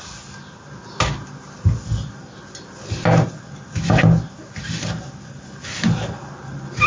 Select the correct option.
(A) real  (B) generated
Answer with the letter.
A